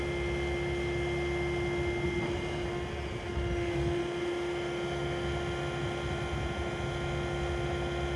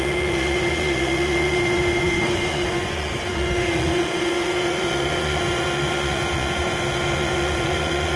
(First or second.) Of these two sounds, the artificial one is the second